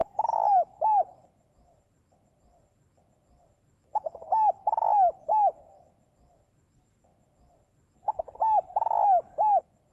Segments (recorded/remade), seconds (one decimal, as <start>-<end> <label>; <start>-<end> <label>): 0.0-2.5 remade; 2.5-9.9 recorded